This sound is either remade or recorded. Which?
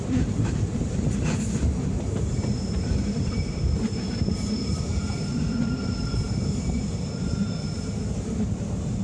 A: remade